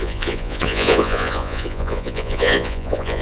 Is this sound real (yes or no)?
no